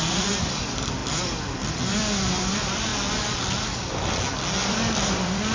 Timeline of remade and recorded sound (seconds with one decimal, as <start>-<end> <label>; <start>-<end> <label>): 0.0-2.9 remade; 2.9-4.7 recorded; 4.7-5.5 remade